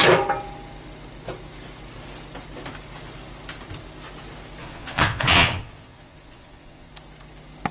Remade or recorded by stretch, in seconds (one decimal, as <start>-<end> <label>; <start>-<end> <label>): 0.0-4.6 recorded; 4.6-6.9 remade; 6.9-7.7 recorded